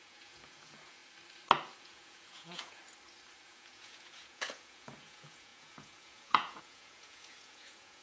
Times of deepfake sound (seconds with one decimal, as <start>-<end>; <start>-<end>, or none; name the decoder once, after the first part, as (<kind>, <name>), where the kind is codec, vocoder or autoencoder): 0.0-1.0 (vocoder, Vocos); 1.8-2.8; 3.4-8.0